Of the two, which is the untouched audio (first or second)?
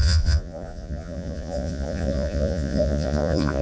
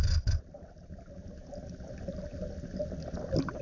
second